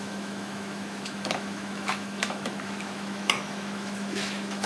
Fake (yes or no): yes